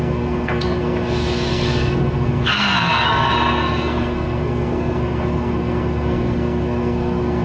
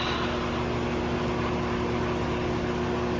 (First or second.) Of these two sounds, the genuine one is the second